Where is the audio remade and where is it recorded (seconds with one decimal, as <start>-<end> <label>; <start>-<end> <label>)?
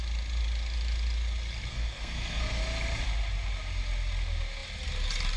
0.0-1.7 recorded; 1.7-2.6 remade; 2.6-5.4 recorded